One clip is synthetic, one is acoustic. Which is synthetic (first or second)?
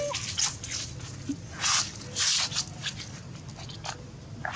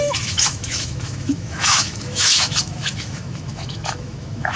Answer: second